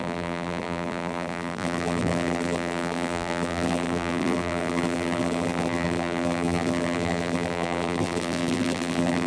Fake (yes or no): yes